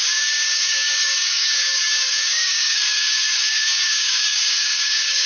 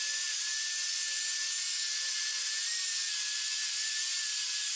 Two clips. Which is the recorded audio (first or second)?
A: second